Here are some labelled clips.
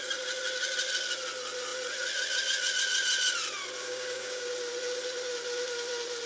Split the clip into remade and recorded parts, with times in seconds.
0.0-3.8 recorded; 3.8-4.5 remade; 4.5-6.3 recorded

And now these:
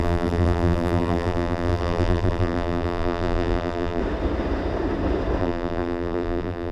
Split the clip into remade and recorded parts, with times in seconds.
0.0-4.0 remade; 4.0-5.4 recorded; 5.4-6.7 remade

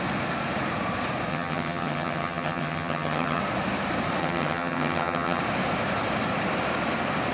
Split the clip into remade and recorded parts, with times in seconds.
0.0-1.3 recorded; 1.3-3.4 remade; 3.4-4.2 recorded; 4.2-5.4 remade; 5.4-7.3 recorded

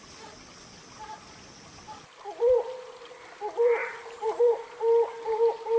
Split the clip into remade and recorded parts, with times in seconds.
0.0-3.8 recorded; 3.8-4.4 remade; 4.4-5.8 recorded

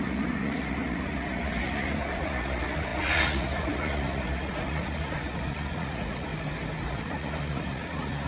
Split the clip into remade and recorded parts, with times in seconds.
0.0-6.3 remade; 6.3-6.9 recorded; 6.9-8.3 remade